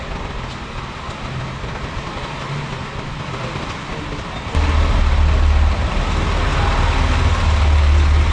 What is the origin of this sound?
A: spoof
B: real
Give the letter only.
B